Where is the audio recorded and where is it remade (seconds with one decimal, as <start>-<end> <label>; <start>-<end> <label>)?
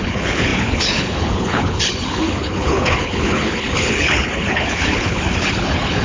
0.0-6.0 remade